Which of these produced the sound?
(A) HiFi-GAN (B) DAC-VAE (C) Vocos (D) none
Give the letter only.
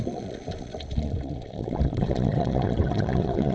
C